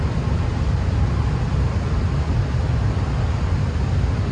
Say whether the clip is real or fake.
real